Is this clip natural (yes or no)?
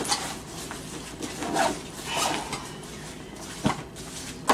yes